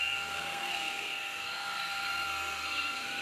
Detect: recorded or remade remade